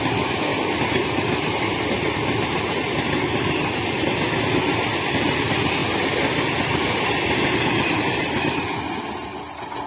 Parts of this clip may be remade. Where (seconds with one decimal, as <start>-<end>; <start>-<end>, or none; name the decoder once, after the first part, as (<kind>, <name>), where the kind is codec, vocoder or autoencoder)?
0.5-2.7 (vocoder, BigVGAN v2); 5.8-8.4